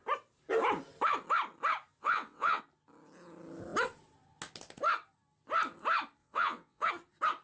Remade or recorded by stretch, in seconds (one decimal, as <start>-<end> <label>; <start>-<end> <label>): 0.0-2.0 recorded; 2.0-2.6 remade; 2.6-6.2 recorded; 6.2-6.9 remade; 6.9-7.4 recorded